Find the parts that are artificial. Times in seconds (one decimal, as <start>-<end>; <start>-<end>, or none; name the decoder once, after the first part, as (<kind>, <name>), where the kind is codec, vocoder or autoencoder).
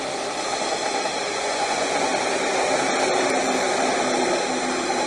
1.3-2.1 (vocoder, Vocos)